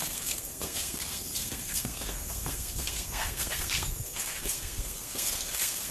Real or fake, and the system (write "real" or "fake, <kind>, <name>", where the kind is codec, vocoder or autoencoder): fake, codec, SNAC